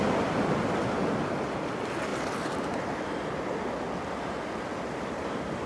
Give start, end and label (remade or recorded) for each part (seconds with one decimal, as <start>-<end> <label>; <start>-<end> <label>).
0.0-5.7 recorded